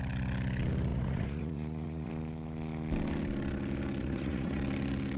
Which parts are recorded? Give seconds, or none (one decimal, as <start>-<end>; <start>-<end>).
0.0-0.9; 2.1-4.0; 4.6-5.2